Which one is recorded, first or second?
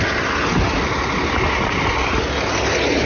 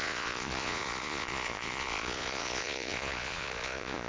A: first